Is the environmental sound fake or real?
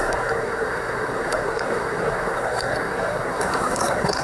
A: fake